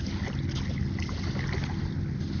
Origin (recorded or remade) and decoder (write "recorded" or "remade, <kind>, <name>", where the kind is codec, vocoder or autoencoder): recorded